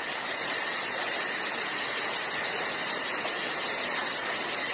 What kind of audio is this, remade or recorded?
recorded